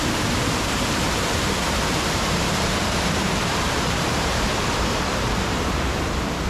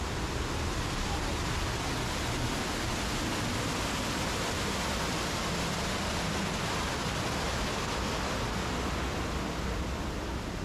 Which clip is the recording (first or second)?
second